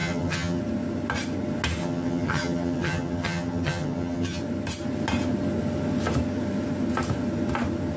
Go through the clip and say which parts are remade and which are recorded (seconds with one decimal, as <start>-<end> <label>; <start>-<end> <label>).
0.0-0.6 remade; 0.6-1.8 recorded; 1.8-4.4 remade; 4.4-8.0 recorded